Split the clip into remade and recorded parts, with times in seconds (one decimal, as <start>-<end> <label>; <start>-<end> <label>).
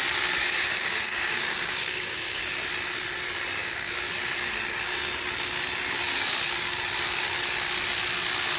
0.0-0.4 recorded; 0.4-2.4 remade; 2.4-3.6 recorded; 3.6-4.1 remade; 4.1-8.6 recorded